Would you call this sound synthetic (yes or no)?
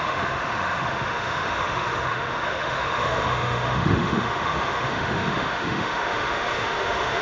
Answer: yes